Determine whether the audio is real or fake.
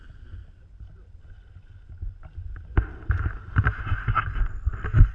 real